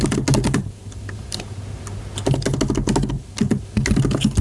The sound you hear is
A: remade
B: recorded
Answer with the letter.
B